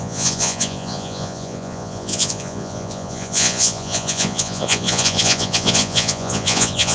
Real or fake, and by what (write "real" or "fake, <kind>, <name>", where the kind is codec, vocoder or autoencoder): fake, vocoder, Vocos